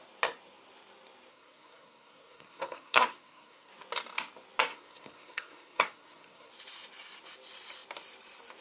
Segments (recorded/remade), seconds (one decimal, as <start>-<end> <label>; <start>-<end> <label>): 0.0-1.3 recorded; 1.3-3.7 remade; 3.7-4.7 recorded; 4.7-6.5 remade; 6.5-8.6 recorded